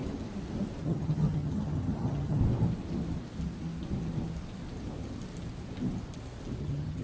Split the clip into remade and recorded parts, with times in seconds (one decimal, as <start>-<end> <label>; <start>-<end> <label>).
0.0-0.8 recorded; 0.8-2.4 remade; 2.4-6.6 recorded; 6.6-7.0 remade